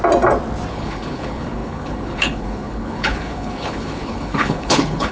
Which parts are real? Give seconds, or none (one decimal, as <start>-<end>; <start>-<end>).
0.0-0.7